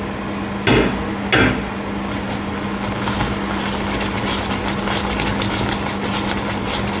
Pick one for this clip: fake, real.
real